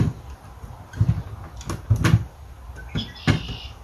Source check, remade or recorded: recorded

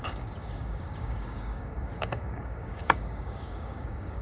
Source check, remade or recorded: remade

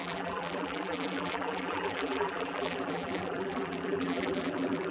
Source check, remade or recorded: remade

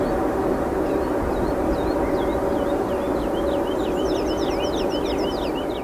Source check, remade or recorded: recorded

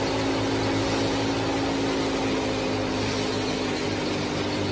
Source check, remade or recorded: recorded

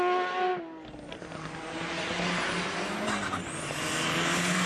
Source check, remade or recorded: recorded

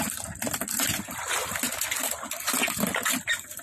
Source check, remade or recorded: recorded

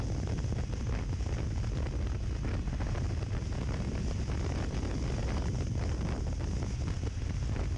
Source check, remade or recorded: recorded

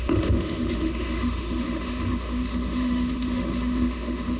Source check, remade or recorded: remade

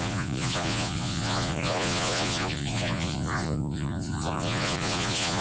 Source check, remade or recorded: remade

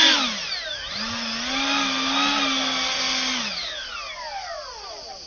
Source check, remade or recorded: recorded